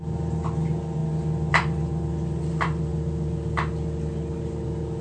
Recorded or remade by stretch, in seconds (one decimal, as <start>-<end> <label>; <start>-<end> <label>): 0.0-5.0 recorded